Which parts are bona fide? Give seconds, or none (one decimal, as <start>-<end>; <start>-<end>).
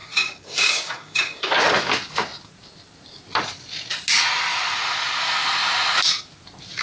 1.5-6.8